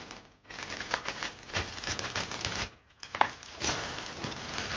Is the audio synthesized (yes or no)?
no